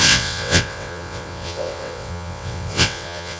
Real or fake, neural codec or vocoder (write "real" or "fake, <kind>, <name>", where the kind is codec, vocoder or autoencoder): fake, vocoder, WaveNeXt